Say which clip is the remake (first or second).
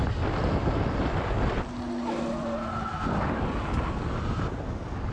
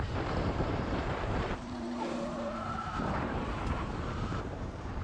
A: second